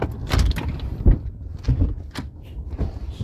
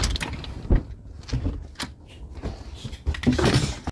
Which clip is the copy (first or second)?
first